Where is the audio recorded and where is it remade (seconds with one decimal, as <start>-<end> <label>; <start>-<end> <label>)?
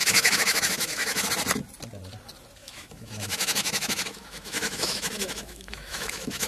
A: 0.0-1.3 remade; 1.3-2.6 recorded; 2.6-6.5 remade